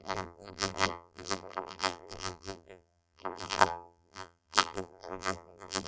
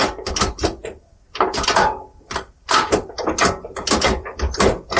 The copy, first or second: first